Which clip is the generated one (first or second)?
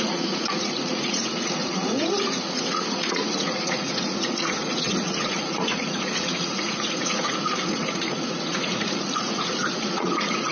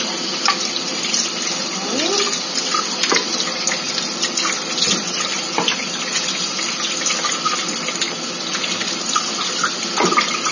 first